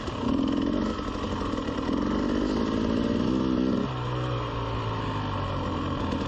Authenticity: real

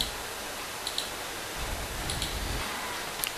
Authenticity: real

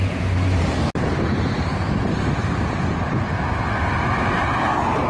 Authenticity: fake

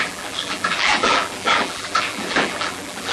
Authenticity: fake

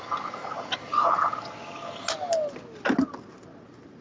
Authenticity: real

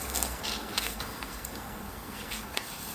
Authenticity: fake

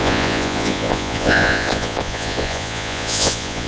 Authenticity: fake